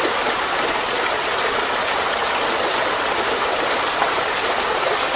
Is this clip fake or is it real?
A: real